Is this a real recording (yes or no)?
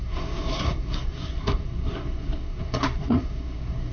no